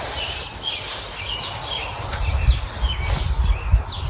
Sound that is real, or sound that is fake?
real